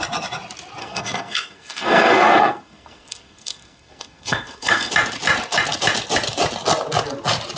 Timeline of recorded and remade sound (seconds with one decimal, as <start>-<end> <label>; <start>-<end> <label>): 0.0-0.8 recorded; 0.8-4.9 remade; 4.9-7.6 recorded